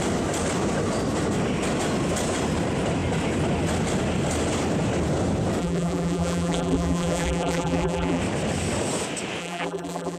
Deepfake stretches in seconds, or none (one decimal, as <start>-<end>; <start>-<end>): 5.6-8.2; 9.4-10.2